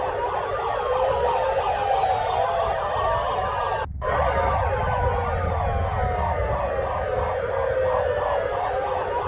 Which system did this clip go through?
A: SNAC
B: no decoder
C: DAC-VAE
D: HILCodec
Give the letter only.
B